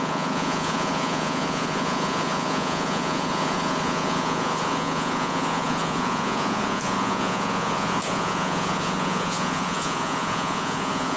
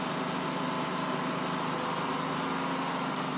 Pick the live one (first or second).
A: second